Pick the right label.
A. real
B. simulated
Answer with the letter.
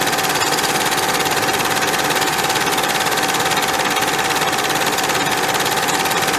B